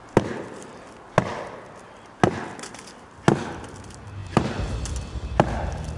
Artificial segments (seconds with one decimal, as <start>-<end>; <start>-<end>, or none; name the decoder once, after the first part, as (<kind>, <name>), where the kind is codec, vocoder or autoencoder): 4.2-4.7 (vocoder, BigVGAN v2)

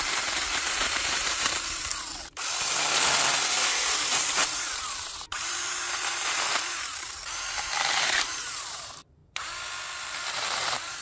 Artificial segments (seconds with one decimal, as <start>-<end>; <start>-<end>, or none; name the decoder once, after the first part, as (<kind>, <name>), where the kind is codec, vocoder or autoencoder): 0.0-1.9 (vocoder, BigVGAN v2); 3.7-9.2; 10.2-11.0

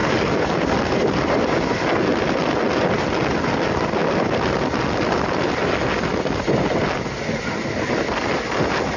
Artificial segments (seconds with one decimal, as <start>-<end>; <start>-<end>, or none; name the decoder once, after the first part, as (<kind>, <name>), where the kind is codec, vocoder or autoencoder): none

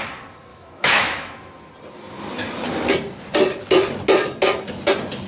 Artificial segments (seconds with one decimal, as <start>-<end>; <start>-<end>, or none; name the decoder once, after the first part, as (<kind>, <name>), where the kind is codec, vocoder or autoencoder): 0.5-1.7 (autoencoder, DAC-VAE)

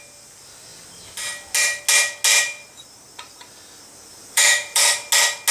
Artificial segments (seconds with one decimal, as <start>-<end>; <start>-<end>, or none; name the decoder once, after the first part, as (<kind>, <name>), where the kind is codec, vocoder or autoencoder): 2.3-3.4 (vocoder, BigVGAN v2); 4.1-5.1